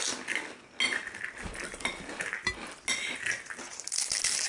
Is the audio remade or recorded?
recorded